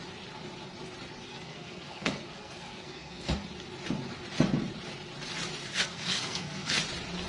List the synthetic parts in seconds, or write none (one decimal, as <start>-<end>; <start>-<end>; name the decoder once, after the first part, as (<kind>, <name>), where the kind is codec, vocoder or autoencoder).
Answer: 1.3-3.4 (codec, SNAC); 5.6-6.8

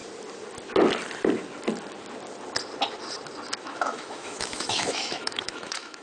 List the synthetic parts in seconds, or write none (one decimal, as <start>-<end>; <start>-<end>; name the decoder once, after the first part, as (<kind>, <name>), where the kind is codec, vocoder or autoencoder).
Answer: 3.6-6.0 (autoencoder, DAC-VAE)

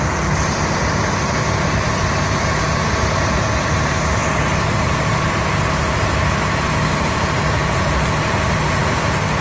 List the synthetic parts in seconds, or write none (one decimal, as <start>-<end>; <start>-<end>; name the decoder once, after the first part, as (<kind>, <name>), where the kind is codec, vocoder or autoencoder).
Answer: none

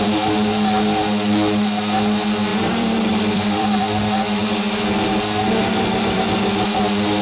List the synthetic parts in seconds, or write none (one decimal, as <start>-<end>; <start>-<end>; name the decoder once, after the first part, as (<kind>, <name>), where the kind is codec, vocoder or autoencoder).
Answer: 2.5-4.8 (vocoder, BigVGAN v2); 5.6-6.2

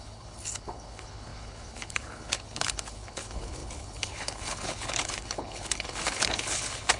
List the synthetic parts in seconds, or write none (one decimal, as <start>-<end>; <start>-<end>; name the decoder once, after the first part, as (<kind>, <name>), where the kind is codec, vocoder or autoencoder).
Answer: 0.0-7.0 (codec, HILCodec)

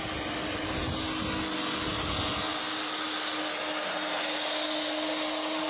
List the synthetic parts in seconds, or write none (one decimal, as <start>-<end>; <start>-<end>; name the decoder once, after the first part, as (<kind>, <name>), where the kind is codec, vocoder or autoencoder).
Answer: none

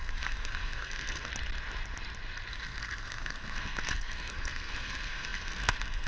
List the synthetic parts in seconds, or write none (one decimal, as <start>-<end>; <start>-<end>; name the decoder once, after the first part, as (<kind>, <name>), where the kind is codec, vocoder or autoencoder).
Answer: 0.0-1.3 (codec, SNAC); 2.5-6.1

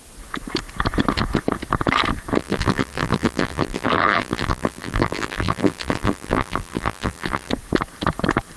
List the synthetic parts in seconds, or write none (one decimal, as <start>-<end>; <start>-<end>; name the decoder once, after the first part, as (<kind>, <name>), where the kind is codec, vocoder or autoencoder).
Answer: 2.4-7.5 (vocoder, BigVGAN v2)